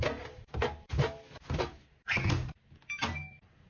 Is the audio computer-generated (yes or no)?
no